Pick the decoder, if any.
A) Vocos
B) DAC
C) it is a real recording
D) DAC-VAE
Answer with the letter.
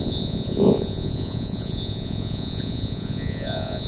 A